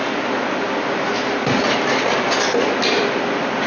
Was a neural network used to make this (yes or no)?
no